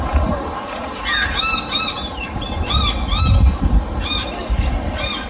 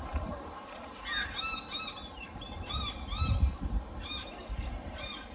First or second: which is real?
first